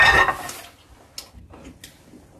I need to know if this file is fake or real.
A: real